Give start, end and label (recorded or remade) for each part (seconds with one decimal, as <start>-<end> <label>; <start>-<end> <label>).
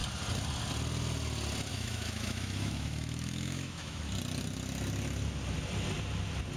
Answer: 0.0-1.7 recorded; 1.7-4.0 remade; 4.0-6.6 recorded